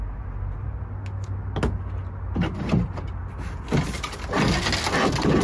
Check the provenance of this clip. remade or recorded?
recorded